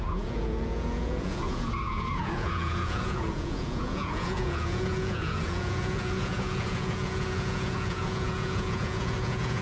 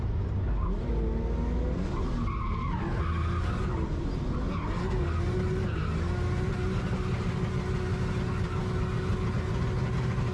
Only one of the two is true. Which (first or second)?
second